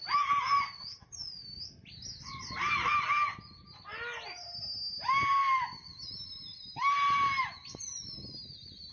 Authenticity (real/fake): real